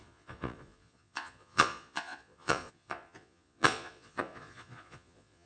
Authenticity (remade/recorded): remade